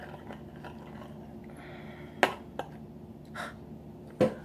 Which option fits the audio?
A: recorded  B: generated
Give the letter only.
A